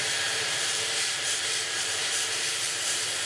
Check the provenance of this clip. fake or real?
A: fake